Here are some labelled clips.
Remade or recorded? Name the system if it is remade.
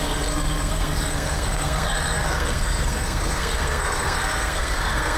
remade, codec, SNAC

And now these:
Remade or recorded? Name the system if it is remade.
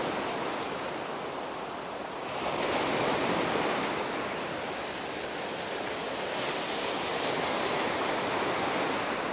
recorded